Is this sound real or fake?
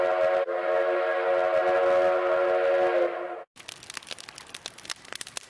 real